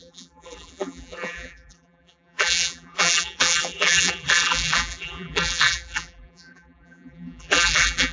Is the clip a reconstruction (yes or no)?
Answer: yes